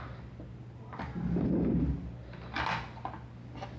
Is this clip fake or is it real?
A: real